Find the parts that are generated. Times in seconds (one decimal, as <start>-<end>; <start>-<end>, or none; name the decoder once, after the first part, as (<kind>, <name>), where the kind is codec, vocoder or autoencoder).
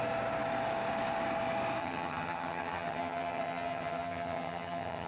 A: 1.8-5.1 (vocoder, HiFi-GAN)